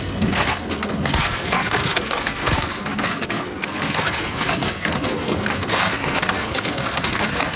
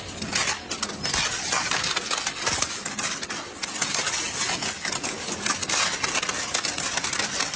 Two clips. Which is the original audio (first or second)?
second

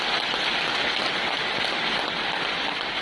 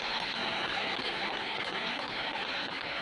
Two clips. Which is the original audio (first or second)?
first